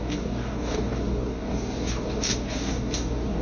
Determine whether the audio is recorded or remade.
remade